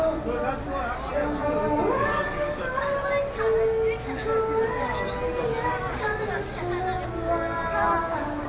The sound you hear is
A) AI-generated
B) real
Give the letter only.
B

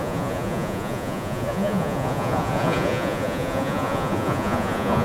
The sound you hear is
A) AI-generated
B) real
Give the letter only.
A